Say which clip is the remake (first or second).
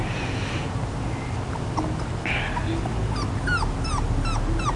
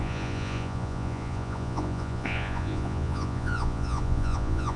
second